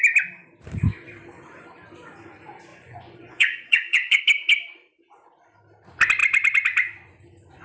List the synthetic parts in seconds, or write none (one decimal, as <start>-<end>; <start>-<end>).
2.7-4.2